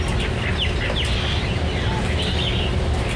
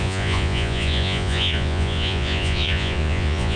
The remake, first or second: second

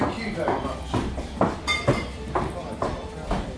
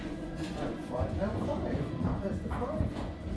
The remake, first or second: second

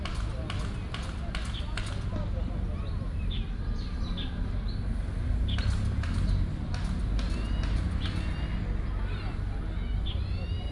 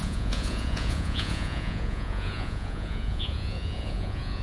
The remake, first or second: second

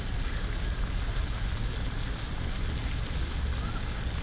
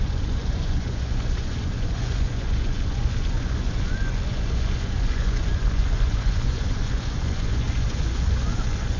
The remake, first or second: second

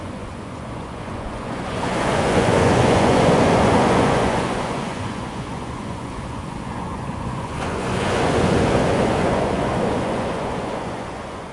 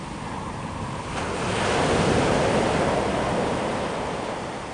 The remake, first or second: first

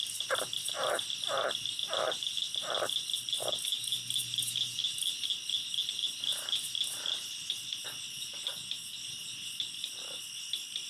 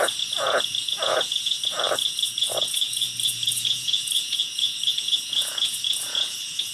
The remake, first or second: second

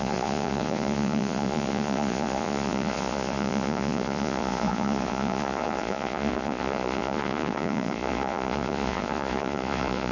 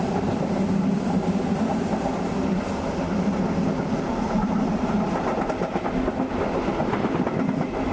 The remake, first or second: first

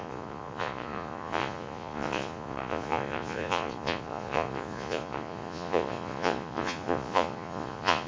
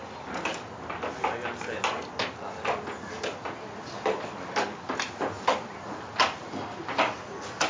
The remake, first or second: first